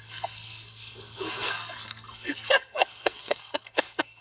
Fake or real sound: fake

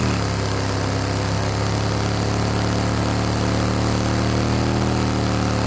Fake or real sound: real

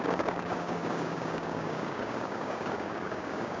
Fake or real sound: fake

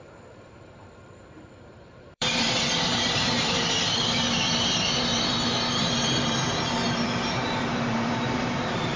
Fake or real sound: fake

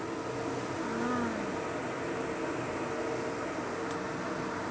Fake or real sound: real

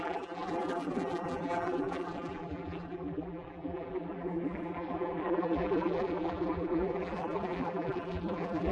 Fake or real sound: fake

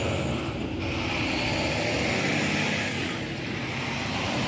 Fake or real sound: real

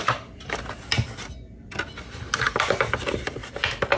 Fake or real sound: real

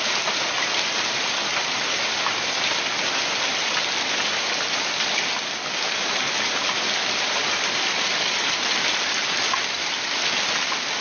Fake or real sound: real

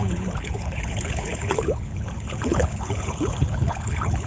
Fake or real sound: fake